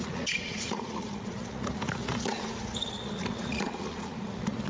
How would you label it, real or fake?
fake